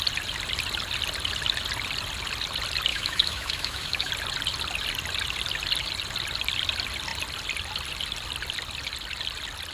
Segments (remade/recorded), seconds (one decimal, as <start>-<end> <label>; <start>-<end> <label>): 0.0-2.9 recorded; 2.9-4.1 remade; 4.1-9.7 recorded